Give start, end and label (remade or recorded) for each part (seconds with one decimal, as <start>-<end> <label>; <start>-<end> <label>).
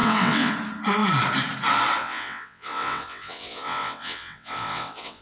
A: 0.0-0.5 remade; 0.5-2.0 recorded; 2.0-5.2 remade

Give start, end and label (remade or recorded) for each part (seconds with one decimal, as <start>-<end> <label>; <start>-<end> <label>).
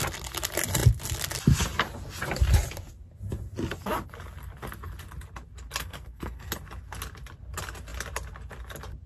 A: 0.0-5.8 recorded; 5.8-6.5 remade; 6.5-9.1 recorded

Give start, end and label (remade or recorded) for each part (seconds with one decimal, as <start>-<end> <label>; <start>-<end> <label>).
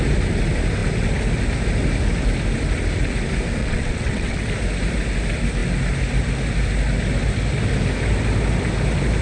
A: 0.0-3.6 recorded; 3.6-4.4 remade; 4.4-9.2 recorded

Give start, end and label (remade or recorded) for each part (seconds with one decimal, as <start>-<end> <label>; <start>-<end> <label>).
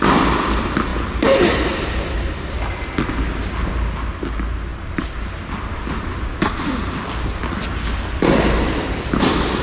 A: 0.0-9.6 recorded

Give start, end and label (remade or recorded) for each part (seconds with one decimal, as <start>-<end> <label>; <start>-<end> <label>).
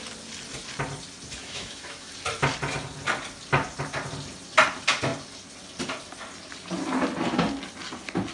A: 0.0-1.4 recorded; 1.4-2.1 remade; 2.1-8.3 recorded